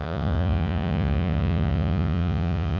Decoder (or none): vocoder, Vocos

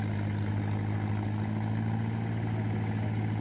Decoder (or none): none